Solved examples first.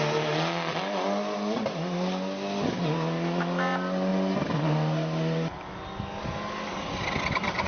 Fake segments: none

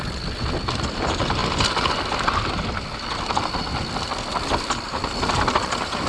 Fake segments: none

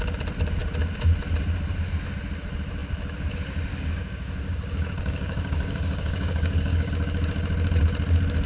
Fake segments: 3.7-6.9 (codec, DAC)

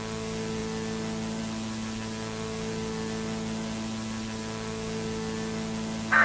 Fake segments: none

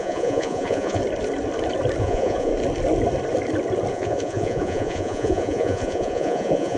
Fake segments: 0.0-1.0 (vocoder, Vocos); 2.0-2.5; 3.9-6.8

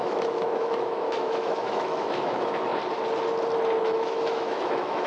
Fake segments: 0.0-2.7 (autoencoder, DAC-VAE); 3.8-5.1

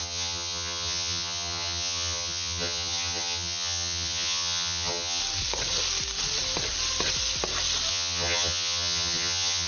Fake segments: 0.0-5.2 (vocoder, HiFi-GAN); 7.9-9.7